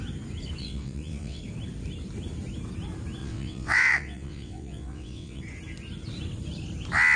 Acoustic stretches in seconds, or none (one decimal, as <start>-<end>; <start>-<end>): 0.0-0.6; 1.4-3.2; 5.4-7.2